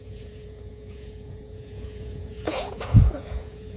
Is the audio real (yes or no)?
no